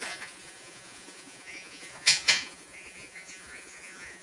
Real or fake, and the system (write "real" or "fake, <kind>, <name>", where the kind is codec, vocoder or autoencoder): fake, vocoder, Vocos